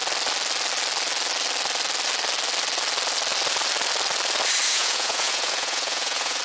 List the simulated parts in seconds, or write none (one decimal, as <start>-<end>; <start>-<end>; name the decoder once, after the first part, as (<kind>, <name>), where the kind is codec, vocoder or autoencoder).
4.7-6.4 (vocoder, Vocos)